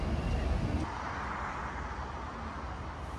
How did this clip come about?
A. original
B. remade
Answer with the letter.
A